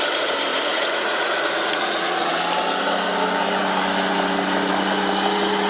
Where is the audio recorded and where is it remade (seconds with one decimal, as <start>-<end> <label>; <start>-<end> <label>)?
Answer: 0.0-0.5 recorded; 0.5-2.3 remade; 2.3-5.7 recorded